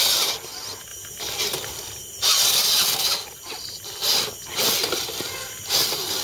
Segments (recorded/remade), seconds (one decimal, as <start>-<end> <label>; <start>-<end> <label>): 0.0-6.2 recorded